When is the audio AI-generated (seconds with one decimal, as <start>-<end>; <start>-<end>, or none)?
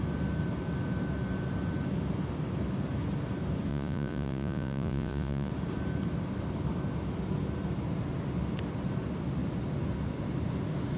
3.7-5.5